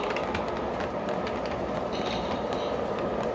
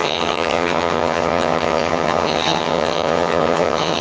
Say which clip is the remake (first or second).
second